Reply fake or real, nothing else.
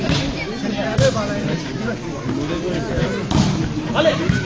real